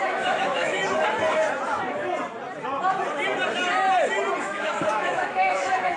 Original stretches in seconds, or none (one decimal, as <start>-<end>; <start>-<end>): 0.8-4.4